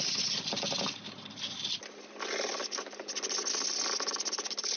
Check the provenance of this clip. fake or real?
real